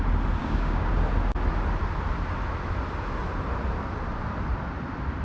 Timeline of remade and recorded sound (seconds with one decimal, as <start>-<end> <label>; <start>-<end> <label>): 0.0-0.4 recorded; 0.4-0.9 remade; 0.9-5.2 recorded